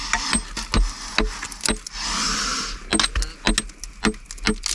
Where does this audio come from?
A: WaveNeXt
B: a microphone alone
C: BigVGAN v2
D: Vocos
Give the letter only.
B